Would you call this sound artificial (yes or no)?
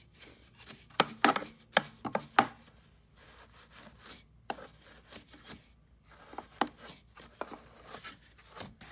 no